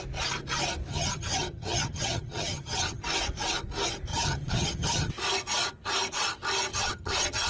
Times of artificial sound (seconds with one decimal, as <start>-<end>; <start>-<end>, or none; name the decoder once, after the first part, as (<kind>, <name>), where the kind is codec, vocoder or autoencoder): 0.9-3.0 (vocoder, HiFi-GAN); 4.1-5.1; 6.7-7.5